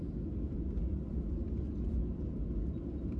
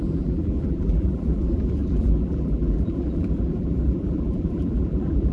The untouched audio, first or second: first